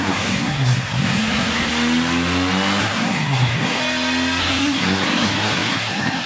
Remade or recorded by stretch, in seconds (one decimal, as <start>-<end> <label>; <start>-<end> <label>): 0.0-1.7 remade; 1.7-2.8 recorded; 2.8-3.8 remade; 3.8-4.4 recorded; 4.4-6.3 remade